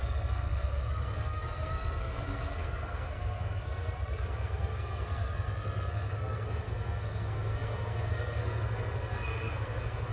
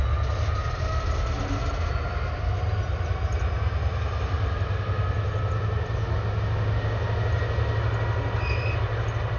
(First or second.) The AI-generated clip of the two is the first